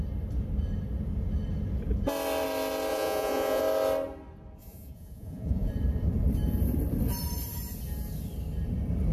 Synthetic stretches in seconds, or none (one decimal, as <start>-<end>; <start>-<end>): 2.9-3.6; 4.6-5.7